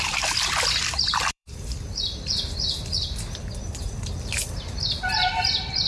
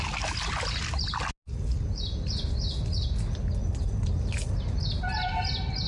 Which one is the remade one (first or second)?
first